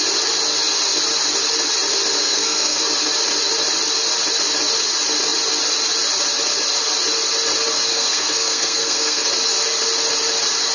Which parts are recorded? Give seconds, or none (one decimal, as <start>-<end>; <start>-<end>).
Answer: 0.0-2.2; 2.8-7.9; 9.3-10.7